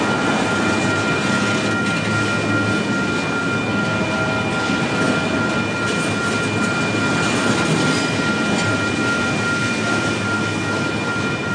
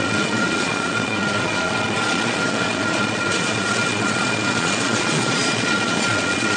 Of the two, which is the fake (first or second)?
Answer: second